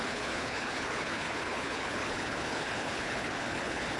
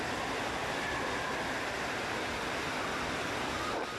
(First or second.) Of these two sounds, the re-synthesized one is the first